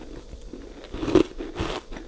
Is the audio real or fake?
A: real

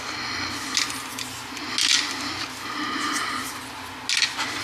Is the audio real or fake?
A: real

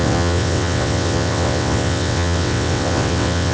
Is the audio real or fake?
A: fake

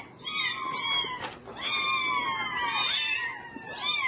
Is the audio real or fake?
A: real